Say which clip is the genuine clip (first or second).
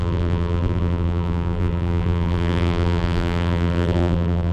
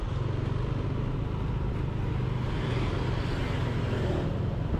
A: second